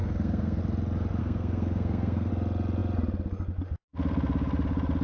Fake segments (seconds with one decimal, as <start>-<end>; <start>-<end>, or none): 0.0-0.6; 1.2-2.3

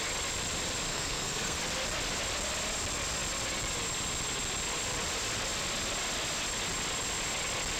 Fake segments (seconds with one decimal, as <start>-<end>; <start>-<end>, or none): 0.9-1.6